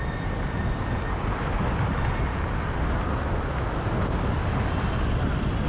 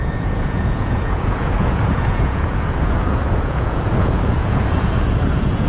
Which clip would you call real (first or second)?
first